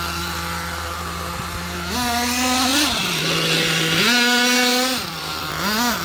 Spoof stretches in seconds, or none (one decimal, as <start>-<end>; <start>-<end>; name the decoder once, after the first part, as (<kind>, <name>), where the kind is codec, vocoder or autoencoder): 2.7-4.0 (vocoder, BigVGAN v2); 4.7-5.5